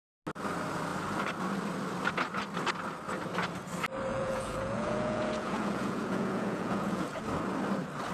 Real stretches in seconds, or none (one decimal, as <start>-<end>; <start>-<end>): 0.0-4.1; 7.2-8.1